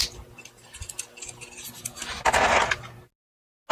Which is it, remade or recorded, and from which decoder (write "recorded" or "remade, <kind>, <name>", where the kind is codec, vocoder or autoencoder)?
recorded